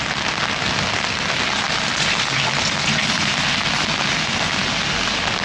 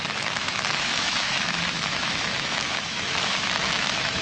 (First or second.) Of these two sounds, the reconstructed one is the second